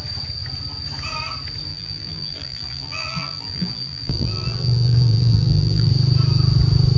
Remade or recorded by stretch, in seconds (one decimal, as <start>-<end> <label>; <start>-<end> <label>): 0.0-1.7 recorded; 1.7-5.9 remade; 5.9-7.0 recorded